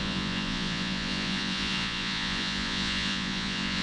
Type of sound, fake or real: fake